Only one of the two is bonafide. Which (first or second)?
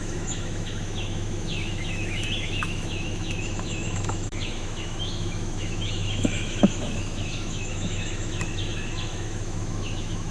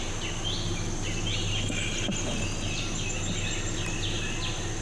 second